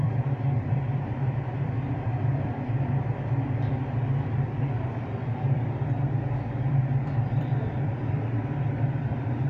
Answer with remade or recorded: remade